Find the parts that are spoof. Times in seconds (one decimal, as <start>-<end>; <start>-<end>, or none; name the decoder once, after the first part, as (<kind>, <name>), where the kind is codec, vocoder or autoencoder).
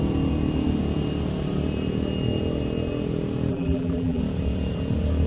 3.5-4.2 (vocoder, BigVGAN v2)